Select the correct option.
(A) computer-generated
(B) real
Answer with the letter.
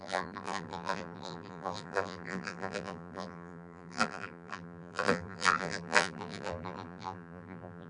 A